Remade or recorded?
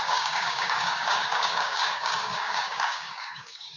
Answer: remade